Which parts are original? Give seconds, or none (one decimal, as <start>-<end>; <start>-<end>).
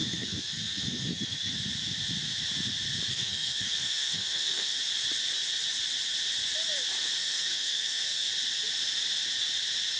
1.5-3.1; 4.8-7.2; 8.3-10.0